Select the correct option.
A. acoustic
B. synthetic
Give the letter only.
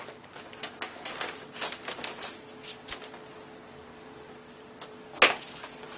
A